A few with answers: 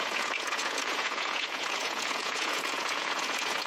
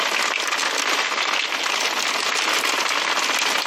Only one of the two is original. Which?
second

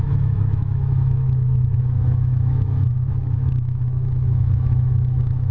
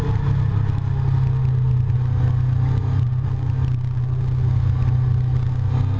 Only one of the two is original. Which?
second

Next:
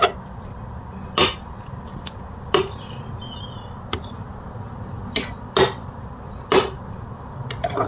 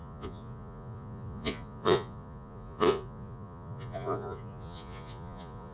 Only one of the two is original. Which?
first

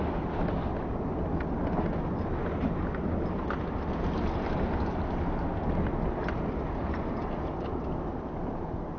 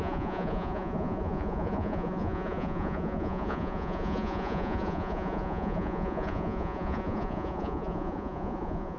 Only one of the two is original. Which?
first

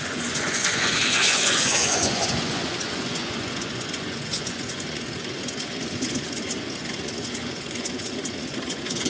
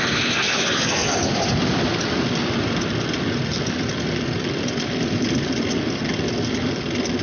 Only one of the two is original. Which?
second